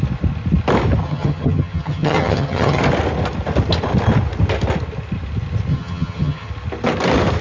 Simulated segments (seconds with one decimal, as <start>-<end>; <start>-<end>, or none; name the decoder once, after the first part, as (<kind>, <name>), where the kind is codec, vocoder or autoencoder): 1.0-2.8 (vocoder, HiFi-GAN); 5.7-6.5